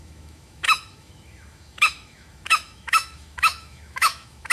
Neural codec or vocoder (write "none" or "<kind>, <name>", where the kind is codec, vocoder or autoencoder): autoencoder, DAC-VAE